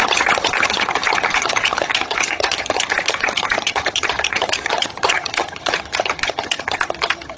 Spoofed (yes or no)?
yes